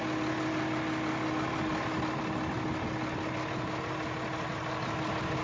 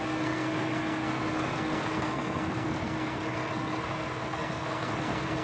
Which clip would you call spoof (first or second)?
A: second